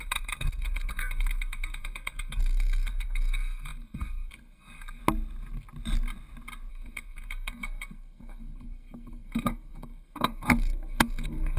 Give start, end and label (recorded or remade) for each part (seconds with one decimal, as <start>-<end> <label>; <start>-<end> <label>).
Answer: 0.0-5.0 remade; 5.0-6.7 recorded; 6.7-11.6 remade